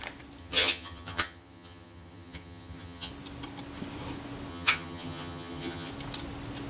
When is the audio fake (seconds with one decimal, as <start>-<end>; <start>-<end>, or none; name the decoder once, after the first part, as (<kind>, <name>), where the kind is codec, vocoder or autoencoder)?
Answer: 0.4-3.1 (vocoder, HiFi-GAN); 4.5-5.9